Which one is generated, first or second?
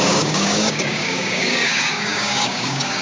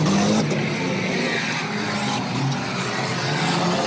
first